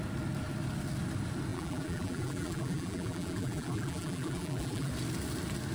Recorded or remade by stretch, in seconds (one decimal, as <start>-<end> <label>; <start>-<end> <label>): 0.0-1.5 recorded; 1.5-4.9 remade; 4.9-5.7 recorded